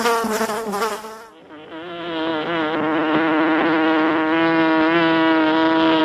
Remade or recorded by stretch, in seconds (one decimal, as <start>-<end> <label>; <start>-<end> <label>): 0.0-6.0 recorded